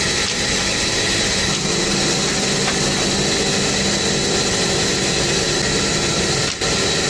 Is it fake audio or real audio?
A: real